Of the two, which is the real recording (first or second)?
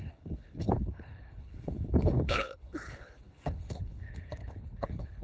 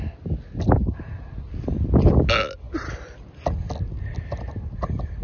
second